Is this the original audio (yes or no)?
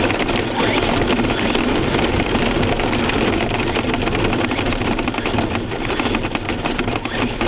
no